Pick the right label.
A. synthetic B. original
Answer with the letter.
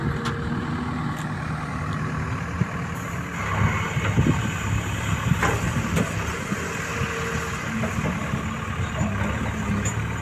B